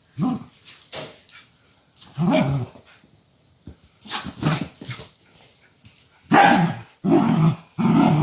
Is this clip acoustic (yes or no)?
yes